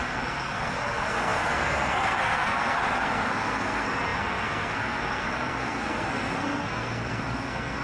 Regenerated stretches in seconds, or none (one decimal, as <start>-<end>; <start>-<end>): 0.0-7.8